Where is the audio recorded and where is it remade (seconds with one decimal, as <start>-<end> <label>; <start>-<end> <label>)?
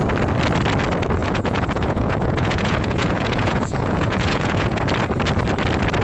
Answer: 0.0-1.2 recorded; 1.2-4.8 remade; 4.8-6.0 recorded